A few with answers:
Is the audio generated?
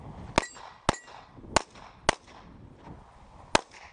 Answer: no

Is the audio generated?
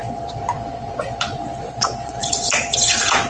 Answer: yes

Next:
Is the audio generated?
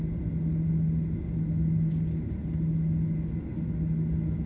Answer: no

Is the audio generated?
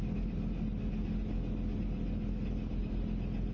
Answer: no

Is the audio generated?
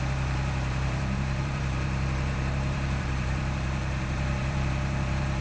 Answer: yes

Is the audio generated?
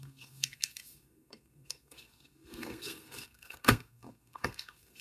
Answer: yes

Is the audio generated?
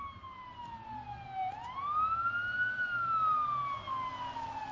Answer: no